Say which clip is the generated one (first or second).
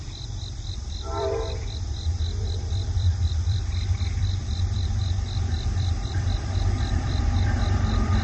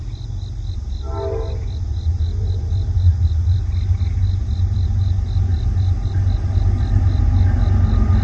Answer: first